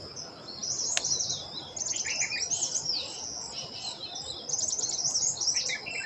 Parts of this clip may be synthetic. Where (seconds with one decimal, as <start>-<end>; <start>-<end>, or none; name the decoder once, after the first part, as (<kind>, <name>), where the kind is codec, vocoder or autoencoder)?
none